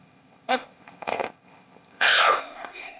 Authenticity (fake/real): fake